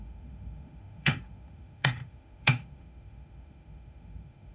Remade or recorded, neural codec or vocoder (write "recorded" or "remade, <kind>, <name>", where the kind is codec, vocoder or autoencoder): remade, autoencoder, DAC-VAE